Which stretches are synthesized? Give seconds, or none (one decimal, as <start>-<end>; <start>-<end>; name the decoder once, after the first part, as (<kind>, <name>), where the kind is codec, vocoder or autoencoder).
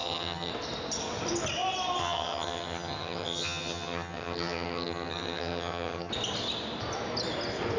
0.0-0.5 (vocoder, HiFi-GAN); 2.0-6.1